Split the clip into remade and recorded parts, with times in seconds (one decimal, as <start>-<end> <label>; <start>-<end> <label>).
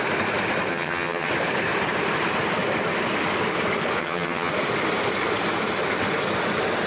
0.0-0.7 recorded; 0.7-1.3 remade; 1.3-4.0 recorded; 4.0-4.5 remade; 4.5-6.9 recorded